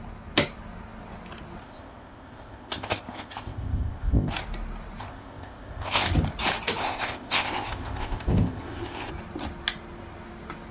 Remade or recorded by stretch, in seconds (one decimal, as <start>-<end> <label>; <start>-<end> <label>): 0.0-1.6 recorded; 1.6-4.3 remade; 4.3-5.0 recorded; 5.0-6.1 remade; 6.1-6.8 recorded; 6.8-9.1 remade; 9.1-10.7 recorded